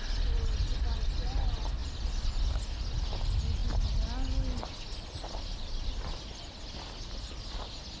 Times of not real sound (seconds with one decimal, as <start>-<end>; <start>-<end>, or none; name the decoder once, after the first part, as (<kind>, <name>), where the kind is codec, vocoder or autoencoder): none